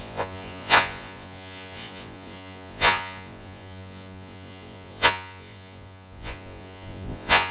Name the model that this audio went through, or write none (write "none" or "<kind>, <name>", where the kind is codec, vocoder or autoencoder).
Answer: vocoder, Vocos